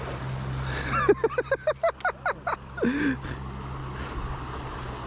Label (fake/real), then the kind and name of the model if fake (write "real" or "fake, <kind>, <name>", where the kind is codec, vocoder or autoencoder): real